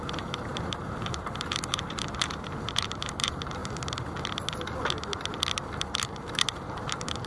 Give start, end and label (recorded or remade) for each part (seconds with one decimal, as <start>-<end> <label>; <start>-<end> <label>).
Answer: 0.0-3.6 remade; 3.6-5.7 recorded; 5.7-7.3 remade